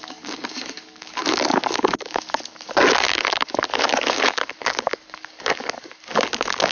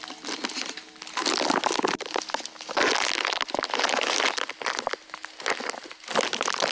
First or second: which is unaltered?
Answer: second